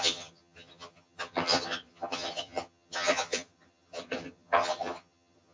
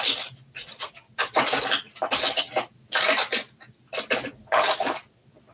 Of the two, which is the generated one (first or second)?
first